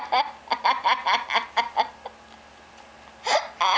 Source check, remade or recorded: recorded